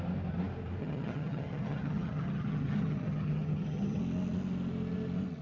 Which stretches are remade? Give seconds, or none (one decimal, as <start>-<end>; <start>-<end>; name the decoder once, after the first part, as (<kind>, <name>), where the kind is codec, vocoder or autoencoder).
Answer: 0.8-4.0 (vocoder, HiFi-GAN)